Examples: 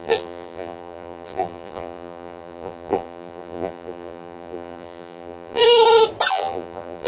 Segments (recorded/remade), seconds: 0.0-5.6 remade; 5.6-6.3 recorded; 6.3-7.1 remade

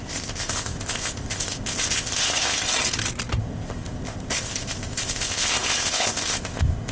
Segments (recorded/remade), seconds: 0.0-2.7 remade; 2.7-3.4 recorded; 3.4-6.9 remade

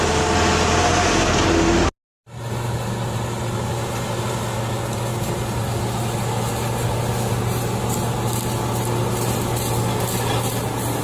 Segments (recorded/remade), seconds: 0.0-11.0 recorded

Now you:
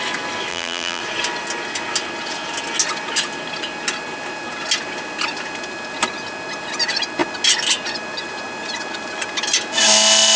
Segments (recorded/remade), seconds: 0.0-0.5 recorded; 0.5-1.0 remade; 1.0-10.4 recorded

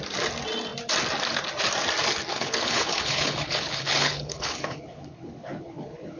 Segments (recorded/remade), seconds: 0.0-2.3 recorded; 2.3-6.2 remade

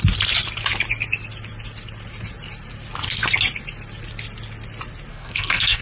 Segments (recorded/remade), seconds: 0.0-5.1 recorded; 5.1-5.8 remade